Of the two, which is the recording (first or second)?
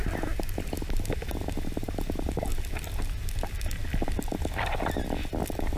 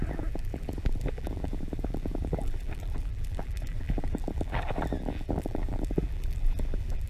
first